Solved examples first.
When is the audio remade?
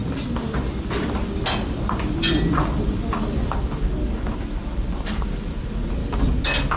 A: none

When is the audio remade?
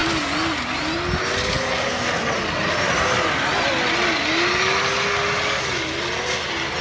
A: none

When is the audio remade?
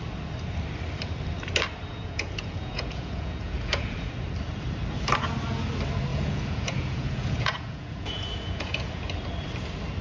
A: 1.9-4.1; 6.1-9.1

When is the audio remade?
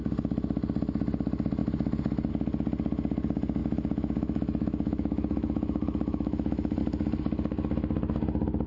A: 3.6-6.8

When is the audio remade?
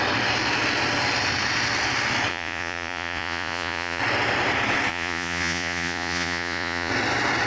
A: 2.3-4.0; 4.9-6.9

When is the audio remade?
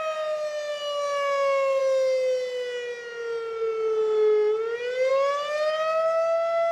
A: none